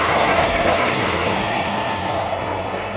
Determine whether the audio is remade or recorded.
remade